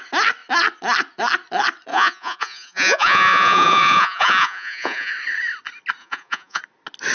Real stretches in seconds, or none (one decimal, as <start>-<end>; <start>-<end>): 0.0-1.9; 5.1-6.0; 6.6-7.1